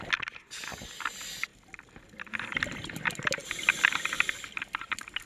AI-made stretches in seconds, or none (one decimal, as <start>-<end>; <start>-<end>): none